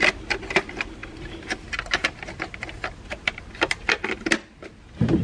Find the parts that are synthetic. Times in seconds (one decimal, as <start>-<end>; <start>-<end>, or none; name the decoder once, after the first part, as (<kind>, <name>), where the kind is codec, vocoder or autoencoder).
none